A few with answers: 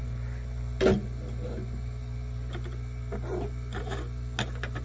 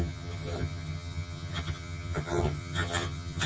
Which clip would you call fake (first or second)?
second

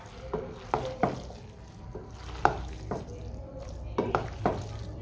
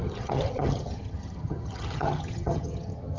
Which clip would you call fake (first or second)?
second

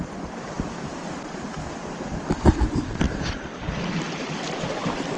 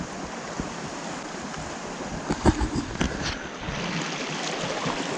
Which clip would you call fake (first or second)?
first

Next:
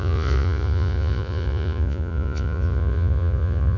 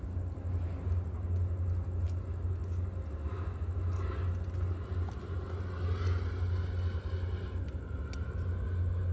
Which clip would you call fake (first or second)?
first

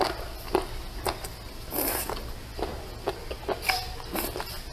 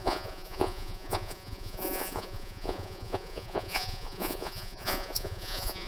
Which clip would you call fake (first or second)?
second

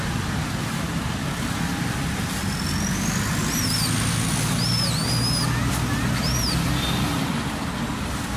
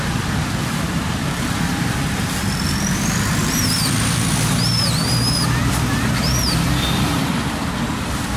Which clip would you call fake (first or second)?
second